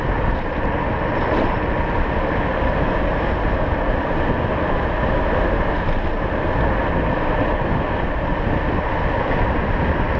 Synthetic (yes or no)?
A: no